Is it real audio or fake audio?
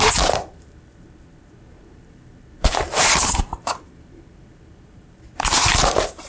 fake